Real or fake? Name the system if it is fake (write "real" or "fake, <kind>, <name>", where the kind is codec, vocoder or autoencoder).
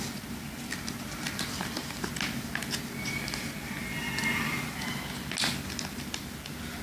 real